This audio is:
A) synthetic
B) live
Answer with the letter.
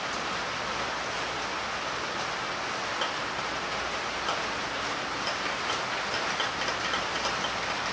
B